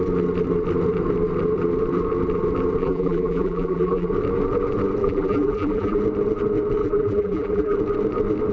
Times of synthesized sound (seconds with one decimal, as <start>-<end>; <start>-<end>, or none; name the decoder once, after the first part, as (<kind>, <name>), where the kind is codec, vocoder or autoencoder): 2.8-4.1 (vocoder, BigVGAN v2); 5.0-6.0; 6.8-7.8